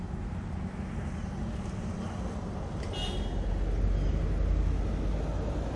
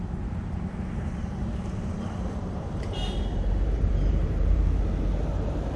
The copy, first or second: second